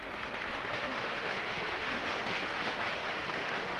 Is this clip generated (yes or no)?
yes